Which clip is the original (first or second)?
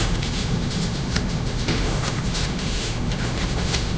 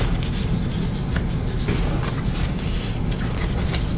second